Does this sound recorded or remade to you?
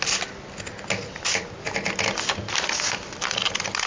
recorded